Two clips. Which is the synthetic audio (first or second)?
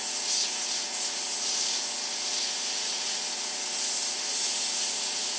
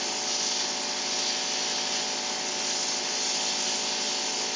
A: first